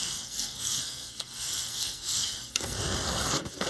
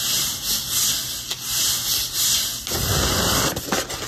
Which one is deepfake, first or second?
first